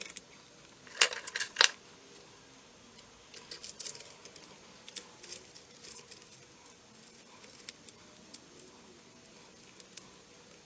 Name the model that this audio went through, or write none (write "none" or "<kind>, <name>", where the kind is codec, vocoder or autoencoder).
none